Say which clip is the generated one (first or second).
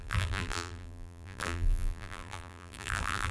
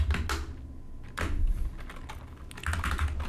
first